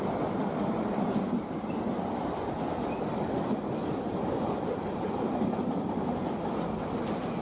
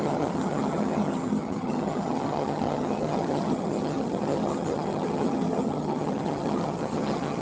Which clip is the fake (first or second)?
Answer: second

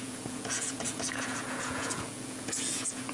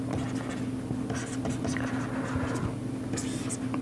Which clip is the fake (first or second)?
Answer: first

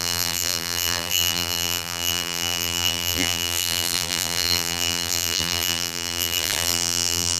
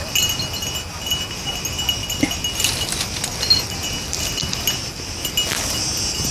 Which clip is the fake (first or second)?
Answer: first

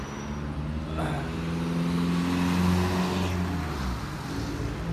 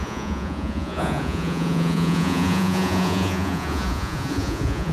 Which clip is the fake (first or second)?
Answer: second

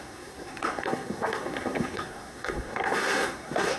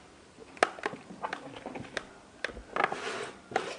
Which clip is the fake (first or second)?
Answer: first